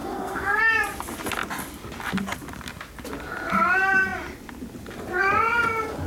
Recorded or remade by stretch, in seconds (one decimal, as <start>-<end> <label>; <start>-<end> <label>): 0.0-0.6 remade; 0.6-6.1 recorded